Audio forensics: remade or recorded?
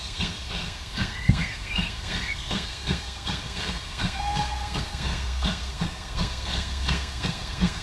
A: remade